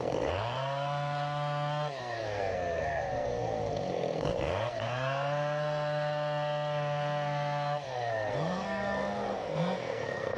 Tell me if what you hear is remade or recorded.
remade